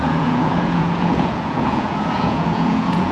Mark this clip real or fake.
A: fake